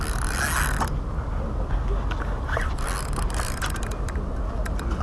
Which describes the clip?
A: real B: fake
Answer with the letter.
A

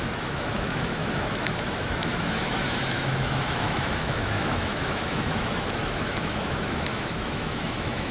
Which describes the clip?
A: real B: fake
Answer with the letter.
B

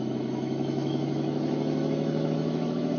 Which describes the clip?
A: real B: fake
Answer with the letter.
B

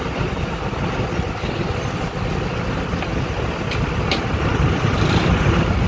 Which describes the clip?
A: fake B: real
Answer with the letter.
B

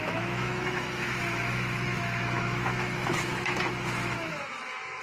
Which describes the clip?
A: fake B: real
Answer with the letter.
A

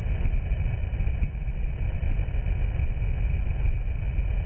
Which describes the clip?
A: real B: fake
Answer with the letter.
A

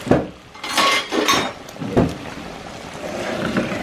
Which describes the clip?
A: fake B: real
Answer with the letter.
B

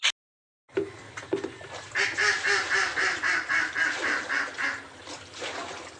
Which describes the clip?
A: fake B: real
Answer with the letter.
B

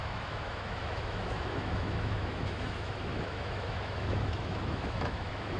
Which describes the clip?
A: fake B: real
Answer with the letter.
A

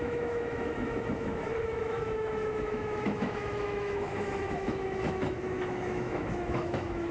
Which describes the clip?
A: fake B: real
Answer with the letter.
A